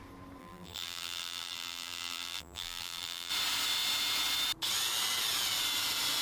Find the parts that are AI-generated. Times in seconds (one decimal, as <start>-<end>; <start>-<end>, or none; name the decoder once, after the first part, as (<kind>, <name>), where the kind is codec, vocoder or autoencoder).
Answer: 0.4-3.3 (vocoder, BigVGAN v2)